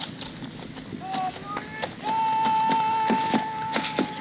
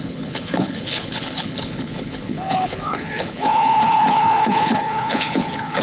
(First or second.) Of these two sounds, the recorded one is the first